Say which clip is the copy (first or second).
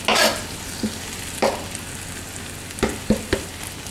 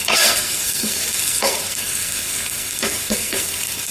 second